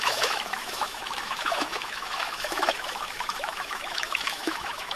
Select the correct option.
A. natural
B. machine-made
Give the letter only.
B